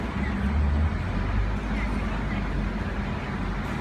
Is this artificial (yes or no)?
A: no